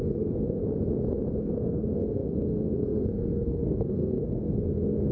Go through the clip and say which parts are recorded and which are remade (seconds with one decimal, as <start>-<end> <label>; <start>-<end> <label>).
0.0-0.6 remade; 0.6-1.4 recorded; 1.4-5.1 remade